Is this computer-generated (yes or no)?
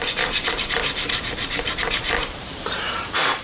yes